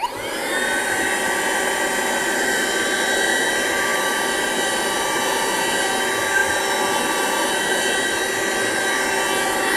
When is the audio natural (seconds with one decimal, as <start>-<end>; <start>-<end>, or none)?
0.0-9.8